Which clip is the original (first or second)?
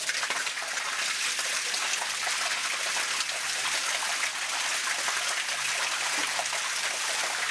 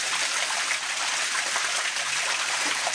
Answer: first